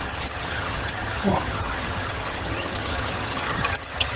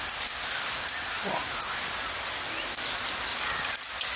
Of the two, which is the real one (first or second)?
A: second